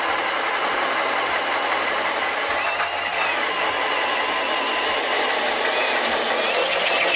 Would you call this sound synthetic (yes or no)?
no